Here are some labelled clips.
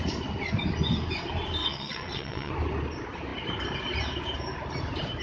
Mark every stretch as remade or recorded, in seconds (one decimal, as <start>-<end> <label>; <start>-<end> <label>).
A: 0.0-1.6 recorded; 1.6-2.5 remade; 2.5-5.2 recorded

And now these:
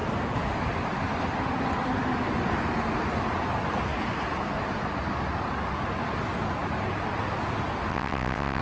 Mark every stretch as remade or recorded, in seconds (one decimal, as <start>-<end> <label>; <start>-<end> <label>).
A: 0.0-7.9 recorded; 7.9-8.6 remade

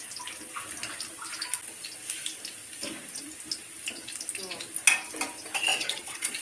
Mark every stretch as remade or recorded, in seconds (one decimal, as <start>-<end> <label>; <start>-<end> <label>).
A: 0.0-5.7 recorded; 5.7-6.4 remade

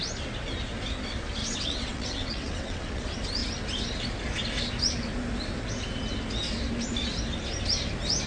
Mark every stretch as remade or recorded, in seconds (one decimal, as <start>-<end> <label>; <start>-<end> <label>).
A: 0.0-1.4 recorded; 1.4-3.0 remade; 3.0-8.3 recorded

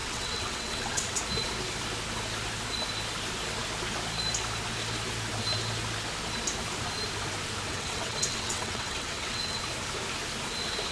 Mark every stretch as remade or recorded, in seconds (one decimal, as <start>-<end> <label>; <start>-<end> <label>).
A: 0.0-1.2 remade; 1.2-7.7 recorded; 7.7-9.6 remade; 9.6-10.9 recorded

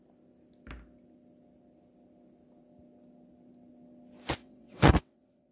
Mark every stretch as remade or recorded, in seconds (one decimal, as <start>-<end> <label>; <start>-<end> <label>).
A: 0.0-4.4 recorded; 4.4-5.5 remade

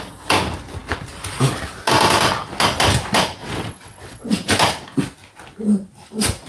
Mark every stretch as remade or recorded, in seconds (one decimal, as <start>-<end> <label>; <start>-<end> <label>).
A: 0.0-3.4 recorded; 3.4-4.5 remade; 4.5-6.5 recorded